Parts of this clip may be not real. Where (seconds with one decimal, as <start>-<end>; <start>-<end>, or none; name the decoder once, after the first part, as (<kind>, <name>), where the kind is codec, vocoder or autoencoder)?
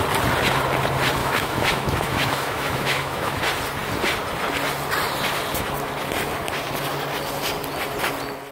1.2-3.4 (autoencoder, DAC-VAE)